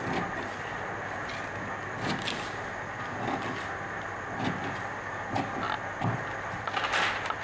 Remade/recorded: recorded